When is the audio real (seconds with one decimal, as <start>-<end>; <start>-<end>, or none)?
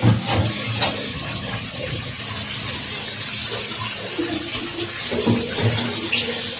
0.0-1.1; 2.2-6.6